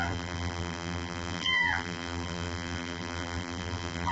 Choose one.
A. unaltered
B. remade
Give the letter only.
B